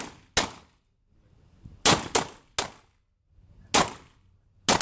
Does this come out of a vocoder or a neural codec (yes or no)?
no